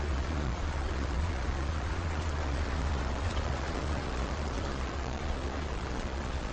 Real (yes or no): no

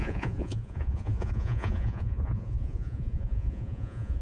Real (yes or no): no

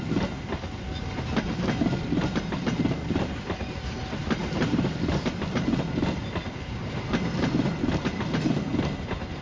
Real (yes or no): yes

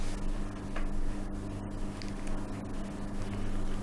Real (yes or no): yes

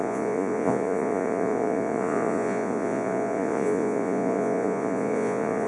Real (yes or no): no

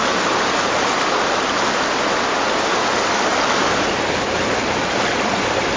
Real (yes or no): yes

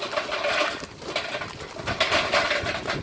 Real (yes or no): yes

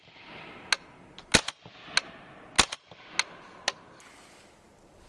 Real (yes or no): yes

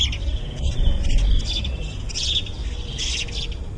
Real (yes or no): yes